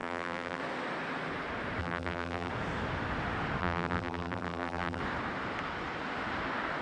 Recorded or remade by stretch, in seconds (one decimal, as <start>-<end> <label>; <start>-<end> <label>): 0.0-0.6 remade; 0.6-1.8 recorded; 1.8-2.5 remade; 2.5-3.6 recorded; 3.6-5.0 remade; 5.0-6.8 recorded

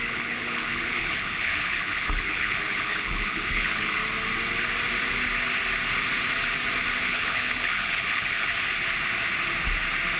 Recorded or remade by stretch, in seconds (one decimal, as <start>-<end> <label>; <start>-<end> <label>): 0.0-4.0 remade; 4.0-7.0 recorded; 7.0-8.5 remade; 8.5-10.2 recorded

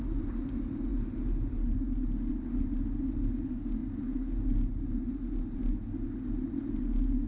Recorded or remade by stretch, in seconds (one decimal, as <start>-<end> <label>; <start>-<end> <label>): 0.0-7.3 recorded

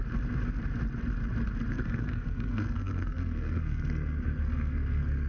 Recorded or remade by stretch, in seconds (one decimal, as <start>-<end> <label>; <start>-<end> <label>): 0.0-1.7 recorded; 1.7-5.3 remade

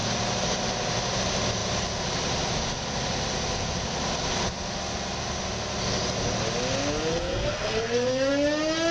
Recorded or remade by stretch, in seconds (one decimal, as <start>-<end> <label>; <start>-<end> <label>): 0.0-7.1 recorded; 7.1-8.3 remade; 8.3-8.9 recorded